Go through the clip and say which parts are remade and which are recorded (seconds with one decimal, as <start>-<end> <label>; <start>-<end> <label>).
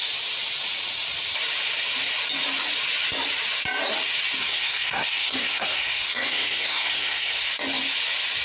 0.0-4.4 recorded; 4.4-7.5 remade; 7.5-8.4 recorded